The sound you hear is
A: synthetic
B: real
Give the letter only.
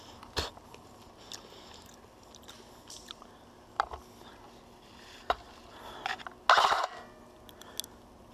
B